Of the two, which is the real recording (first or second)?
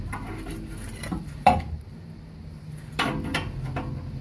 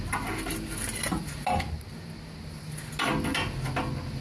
second